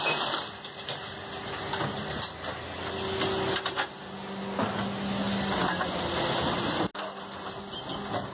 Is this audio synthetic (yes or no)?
no